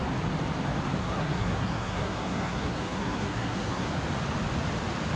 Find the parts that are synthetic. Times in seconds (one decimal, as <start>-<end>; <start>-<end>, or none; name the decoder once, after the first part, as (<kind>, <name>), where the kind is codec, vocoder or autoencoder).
1.0-3.9 (codec, SNAC)